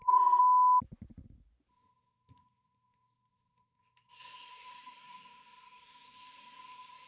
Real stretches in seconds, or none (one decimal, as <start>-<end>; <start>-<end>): 0.4-1.7

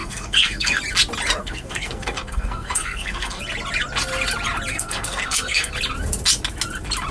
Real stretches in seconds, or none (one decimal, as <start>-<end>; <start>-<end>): 0.8-1.4; 3.4-4.7; 5.7-7.1

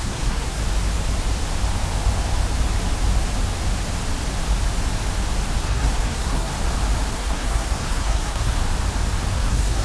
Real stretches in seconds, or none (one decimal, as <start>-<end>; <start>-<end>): 0.6-5.6; 6.5-7.1; 8.6-9.3

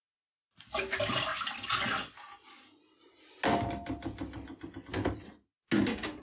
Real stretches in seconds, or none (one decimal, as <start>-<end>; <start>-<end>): 0.0-6.2

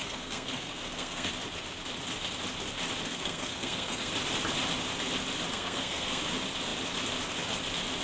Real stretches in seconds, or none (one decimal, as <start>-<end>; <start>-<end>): 1.3-3.1; 4.1-5.5; 6.2-8.0

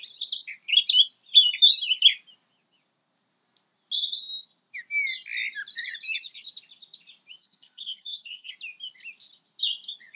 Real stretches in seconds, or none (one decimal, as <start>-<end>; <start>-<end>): 0.0-7.4; 8.5-10.2

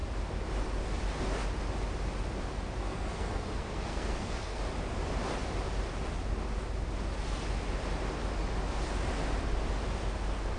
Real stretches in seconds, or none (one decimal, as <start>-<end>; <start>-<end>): 0.0-2.8; 4.6-10.6